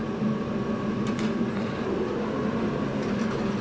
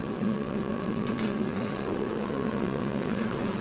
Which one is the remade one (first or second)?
second